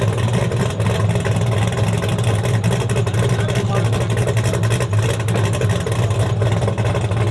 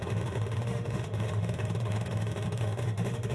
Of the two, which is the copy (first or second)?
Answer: second